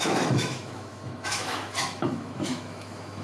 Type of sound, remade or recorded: remade